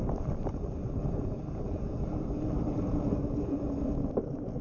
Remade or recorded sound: recorded